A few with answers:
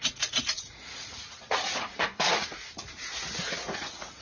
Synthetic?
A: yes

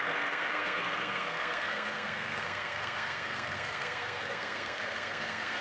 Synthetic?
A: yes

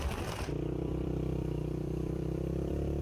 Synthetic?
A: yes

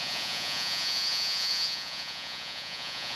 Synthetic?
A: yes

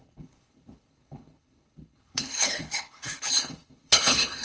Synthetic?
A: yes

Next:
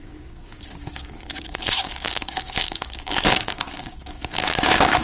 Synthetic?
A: yes